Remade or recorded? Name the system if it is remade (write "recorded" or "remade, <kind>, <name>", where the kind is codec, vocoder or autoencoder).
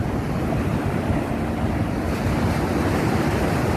recorded